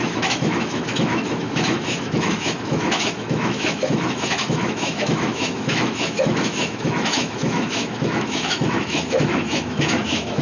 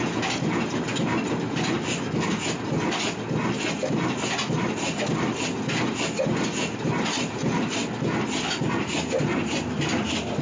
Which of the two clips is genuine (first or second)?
second